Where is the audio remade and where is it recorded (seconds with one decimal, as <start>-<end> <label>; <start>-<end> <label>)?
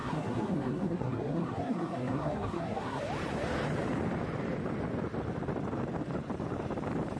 0.0-3.0 remade; 3.0-7.2 recorded